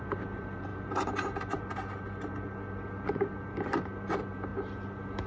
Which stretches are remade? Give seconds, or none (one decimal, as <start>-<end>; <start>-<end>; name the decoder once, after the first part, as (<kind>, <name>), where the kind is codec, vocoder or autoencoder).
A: 0.0-5.3 (vocoder, BigVGAN v2)